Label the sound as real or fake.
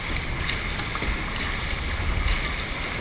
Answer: real